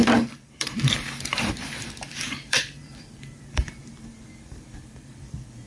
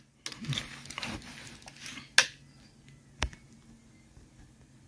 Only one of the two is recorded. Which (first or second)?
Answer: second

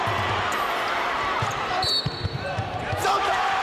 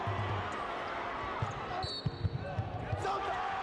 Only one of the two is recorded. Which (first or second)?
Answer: second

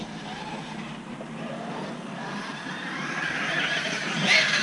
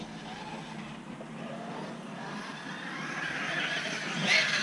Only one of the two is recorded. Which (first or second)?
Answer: second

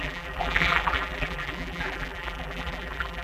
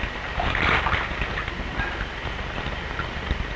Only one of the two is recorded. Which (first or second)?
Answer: second